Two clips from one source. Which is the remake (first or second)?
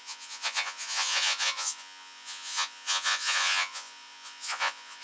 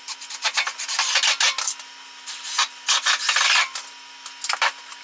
first